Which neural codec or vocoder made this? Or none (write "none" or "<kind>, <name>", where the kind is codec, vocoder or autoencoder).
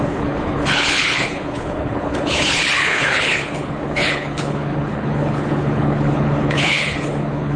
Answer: codec, HILCodec